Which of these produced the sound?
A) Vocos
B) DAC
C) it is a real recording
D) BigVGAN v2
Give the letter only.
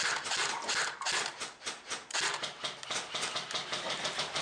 C